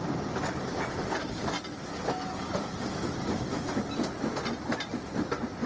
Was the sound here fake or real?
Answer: real